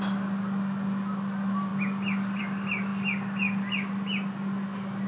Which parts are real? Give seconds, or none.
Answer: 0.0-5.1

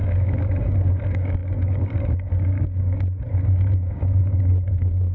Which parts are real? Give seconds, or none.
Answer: none

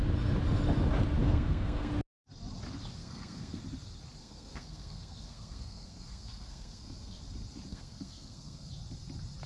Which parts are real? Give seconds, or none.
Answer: 0.0-1.2; 1.9-3.0; 3.6-4.2; 7.2-7.7; 8.7-9.5

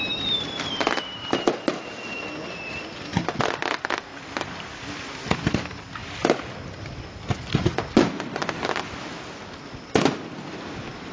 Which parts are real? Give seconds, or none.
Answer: 0.0-11.1

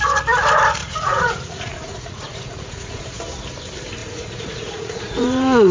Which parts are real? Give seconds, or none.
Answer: 0.0-0.8; 3.0-4.0